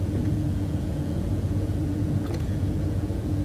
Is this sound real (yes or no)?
no